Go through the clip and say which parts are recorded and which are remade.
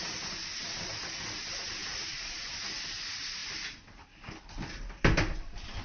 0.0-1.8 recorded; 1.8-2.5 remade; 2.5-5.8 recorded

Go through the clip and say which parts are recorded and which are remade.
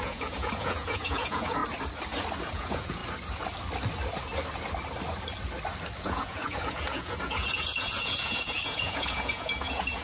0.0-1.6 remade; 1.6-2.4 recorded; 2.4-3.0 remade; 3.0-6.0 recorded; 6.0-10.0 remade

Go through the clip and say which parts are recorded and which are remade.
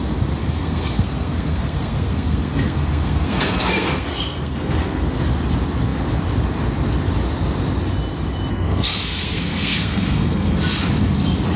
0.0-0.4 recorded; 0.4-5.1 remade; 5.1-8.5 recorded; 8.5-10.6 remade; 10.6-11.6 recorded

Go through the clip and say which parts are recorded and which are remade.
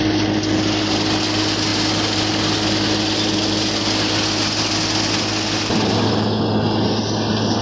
0.0-7.6 recorded